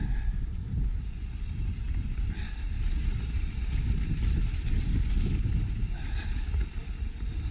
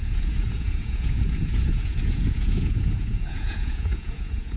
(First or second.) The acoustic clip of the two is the first